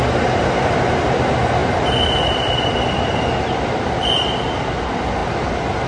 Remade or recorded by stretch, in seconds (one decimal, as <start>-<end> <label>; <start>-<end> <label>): 0.0-1.6 recorded; 1.6-4.5 remade; 4.5-5.9 recorded